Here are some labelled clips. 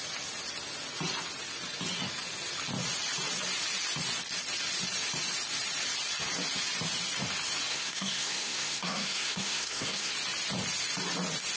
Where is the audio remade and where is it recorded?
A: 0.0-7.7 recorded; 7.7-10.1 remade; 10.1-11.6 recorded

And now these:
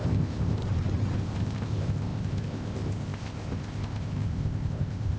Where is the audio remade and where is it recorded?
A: 0.0-0.6 remade; 0.6-1.2 recorded; 1.2-5.2 remade

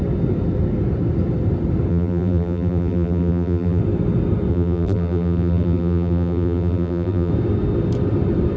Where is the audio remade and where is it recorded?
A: 0.0-1.9 recorded; 1.9-3.8 remade; 3.8-4.5 recorded; 4.5-7.3 remade; 7.3-8.6 recorded

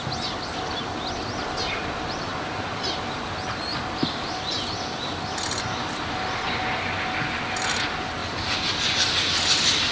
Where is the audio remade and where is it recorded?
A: 0.0-9.9 recorded

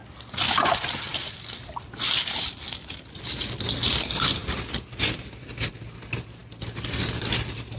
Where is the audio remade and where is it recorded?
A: 0.0-7.8 recorded

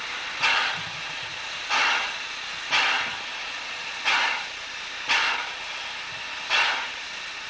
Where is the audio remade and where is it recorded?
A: 0.0-3.3 recorded; 3.3-4.0 remade; 4.0-7.5 recorded

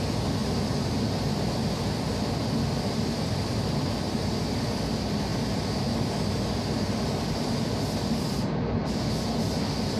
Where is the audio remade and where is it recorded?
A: 0.0-0.4 recorded; 0.4-4.2 remade; 4.2-10.0 recorded